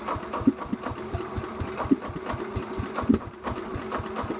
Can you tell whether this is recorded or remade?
remade